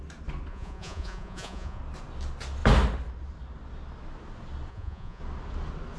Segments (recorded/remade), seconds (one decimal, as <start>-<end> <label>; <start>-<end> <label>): 0.0-0.5 recorded; 0.5-1.8 remade; 1.8-4.7 recorded; 4.7-5.2 remade; 5.2-6.0 recorded